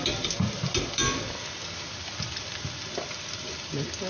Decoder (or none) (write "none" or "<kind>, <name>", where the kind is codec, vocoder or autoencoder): none